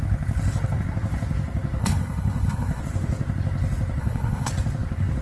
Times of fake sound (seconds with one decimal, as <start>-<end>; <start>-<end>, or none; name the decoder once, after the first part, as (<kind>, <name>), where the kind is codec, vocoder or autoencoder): 1.8-2.8 (codec, HILCodec); 4.0-4.5